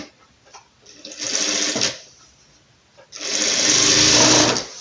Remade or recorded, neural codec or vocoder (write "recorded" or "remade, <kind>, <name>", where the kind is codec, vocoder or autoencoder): recorded